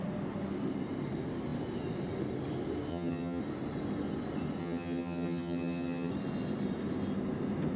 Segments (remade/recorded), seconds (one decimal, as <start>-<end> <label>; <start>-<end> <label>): 0.0-2.9 recorded; 2.9-3.4 remade; 3.4-4.6 recorded; 4.6-6.1 remade; 6.1-7.8 recorded